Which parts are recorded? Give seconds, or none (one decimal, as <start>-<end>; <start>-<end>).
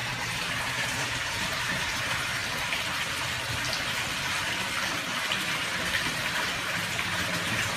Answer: 2.4-6.3